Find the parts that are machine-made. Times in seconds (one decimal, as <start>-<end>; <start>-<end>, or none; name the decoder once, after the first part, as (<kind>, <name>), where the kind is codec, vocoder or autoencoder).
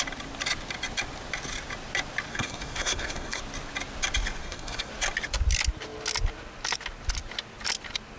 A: 2.3-3.4 (codec, SNAC); 4.4-4.9